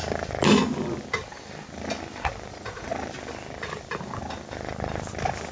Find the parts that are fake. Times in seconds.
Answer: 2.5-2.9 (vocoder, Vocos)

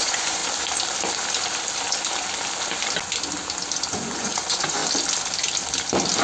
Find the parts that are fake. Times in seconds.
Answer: 0.0-0.4 (vocoder, Vocos); 3.9-4.8

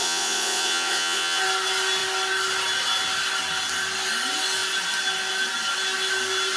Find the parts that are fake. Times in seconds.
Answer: 0.0-1.4 (vocoder, Vocos)

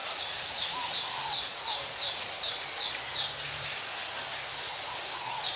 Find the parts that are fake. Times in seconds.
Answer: 0.0-2.9 (vocoder, Vocos); 4.5-5.6

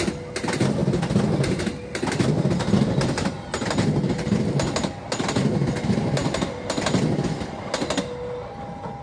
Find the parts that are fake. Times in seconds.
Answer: none

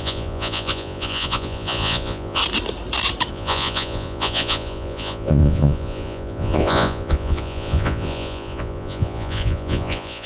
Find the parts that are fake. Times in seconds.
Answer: 0.0-2.4 (vocoder, Vocos); 3.3-10.3

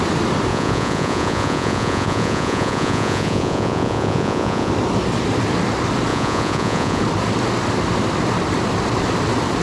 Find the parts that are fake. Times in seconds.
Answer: 0.5-4.7 (vocoder, Vocos); 6.1-7.0